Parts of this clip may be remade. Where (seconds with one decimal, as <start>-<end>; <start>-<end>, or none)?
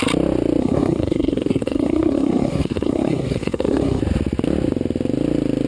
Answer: 0.6-4.0